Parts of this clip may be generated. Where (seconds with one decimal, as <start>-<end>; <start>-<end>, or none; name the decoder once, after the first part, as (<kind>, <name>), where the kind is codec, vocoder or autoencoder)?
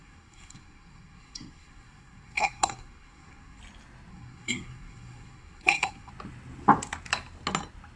0.0-3.6 (codec, SNAC); 4.1-6.1